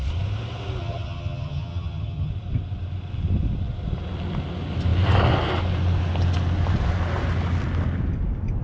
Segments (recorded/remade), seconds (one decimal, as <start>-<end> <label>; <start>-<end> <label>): 0.0-0.8 recorded; 0.8-2.3 remade; 2.3-8.6 recorded